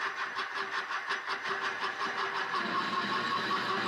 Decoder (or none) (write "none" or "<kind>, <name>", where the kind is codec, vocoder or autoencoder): vocoder, BigVGAN v2